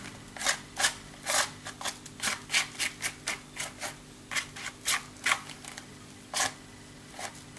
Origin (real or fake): real